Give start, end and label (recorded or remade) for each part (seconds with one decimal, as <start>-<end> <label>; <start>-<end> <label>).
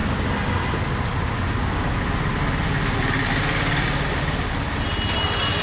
0.0-5.6 recorded